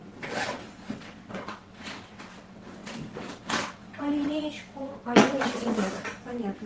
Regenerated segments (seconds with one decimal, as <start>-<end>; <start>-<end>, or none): 0.0-6.7